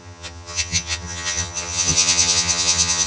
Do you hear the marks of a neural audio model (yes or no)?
yes